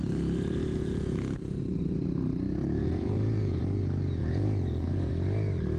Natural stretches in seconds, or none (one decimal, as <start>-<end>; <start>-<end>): 0.0-0.6; 1.6-2.8; 3.6-4.2; 5.1-5.8

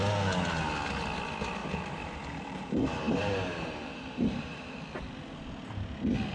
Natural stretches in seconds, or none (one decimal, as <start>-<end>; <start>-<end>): 0.0-1.6; 4.8-6.3

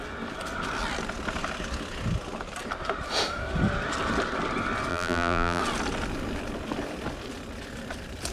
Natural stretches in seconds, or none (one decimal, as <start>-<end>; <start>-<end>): 0.0-4.9; 5.6-8.3

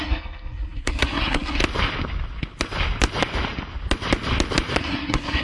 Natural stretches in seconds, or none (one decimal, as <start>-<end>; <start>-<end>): 1.6-4.8

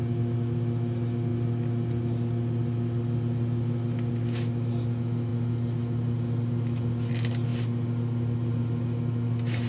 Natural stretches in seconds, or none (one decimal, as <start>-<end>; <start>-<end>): 0.0-9.7